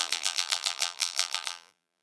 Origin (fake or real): fake